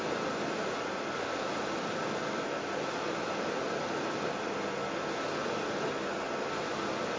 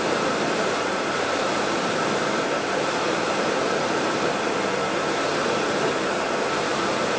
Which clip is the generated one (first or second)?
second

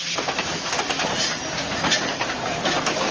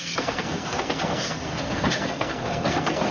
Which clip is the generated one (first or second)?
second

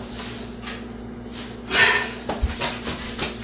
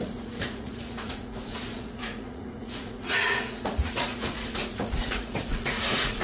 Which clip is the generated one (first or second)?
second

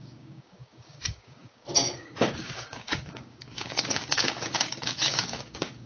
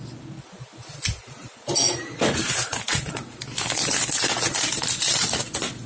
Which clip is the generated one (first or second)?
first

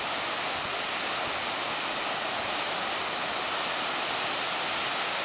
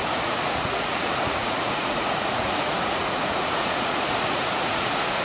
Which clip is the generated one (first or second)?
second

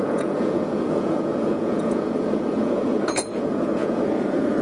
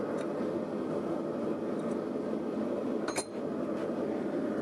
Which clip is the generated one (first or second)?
first